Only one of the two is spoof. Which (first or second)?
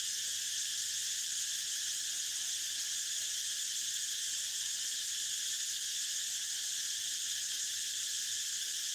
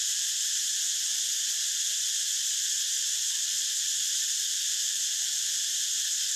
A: second